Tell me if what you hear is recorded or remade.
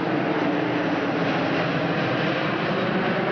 recorded